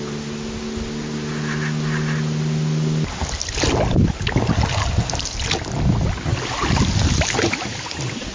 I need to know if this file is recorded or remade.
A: recorded